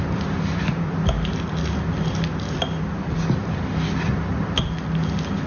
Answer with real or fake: real